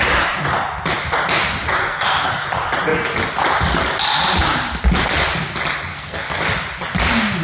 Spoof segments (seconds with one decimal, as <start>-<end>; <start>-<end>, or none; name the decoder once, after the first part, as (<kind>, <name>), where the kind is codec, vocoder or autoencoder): 1.8-2.4 (codec, SNAC); 5.9-6.4